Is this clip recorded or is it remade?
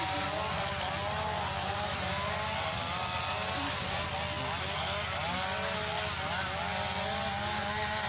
recorded